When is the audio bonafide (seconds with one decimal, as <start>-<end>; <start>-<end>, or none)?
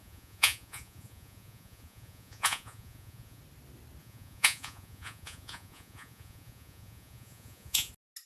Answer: 3.4-4.0; 7.9-8.3